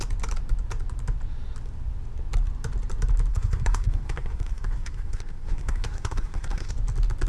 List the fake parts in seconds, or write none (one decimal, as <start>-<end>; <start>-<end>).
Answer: 3.3-6.7